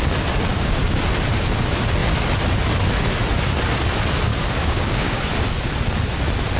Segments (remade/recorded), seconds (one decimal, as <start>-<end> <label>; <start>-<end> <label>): 0.0-0.5 recorded; 0.5-1.0 remade; 1.0-4.3 recorded; 4.3-5.2 remade; 5.2-6.6 recorded